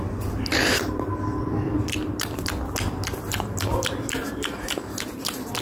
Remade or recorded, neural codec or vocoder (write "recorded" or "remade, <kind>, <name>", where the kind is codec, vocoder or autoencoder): remade, vocoder, BigVGAN v2